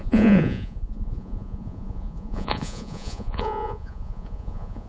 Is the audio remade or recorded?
remade